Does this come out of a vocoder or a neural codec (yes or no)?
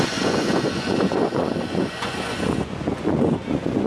yes